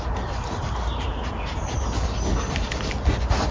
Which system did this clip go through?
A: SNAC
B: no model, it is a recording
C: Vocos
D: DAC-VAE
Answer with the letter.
B